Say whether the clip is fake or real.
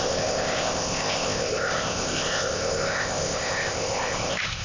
fake